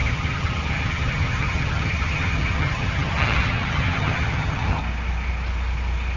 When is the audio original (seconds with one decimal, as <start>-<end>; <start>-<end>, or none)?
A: 4.8-6.2

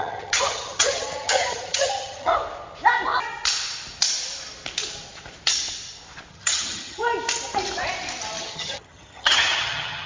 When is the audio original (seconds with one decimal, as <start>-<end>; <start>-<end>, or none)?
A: 2.3-6.3; 7.0-8.4

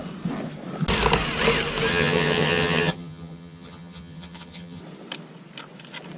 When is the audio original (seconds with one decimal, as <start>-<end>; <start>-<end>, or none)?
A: 0.0-1.9; 4.8-6.2

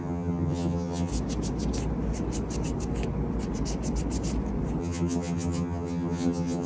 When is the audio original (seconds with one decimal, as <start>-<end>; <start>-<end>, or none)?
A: 1.1-4.8

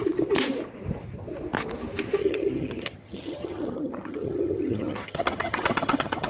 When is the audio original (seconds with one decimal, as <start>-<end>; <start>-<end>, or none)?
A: 0.0-2.2

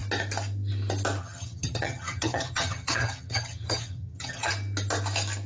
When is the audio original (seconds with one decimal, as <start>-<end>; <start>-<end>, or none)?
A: 0.0-1.2; 4.5-5.5